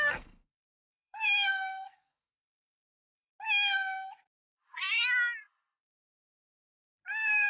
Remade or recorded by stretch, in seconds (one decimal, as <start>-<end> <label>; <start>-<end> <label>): 0.0-3.3 remade; 3.3-7.1 recorded; 7.1-7.5 remade